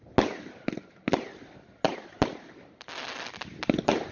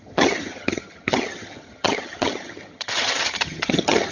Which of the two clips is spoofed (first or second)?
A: second